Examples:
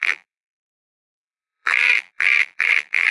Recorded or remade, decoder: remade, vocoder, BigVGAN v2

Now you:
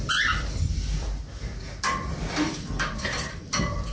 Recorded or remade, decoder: remade, vocoder, BigVGAN v2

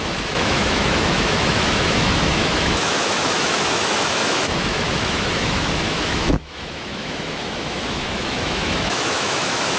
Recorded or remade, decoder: remade, autoencoder, DAC-VAE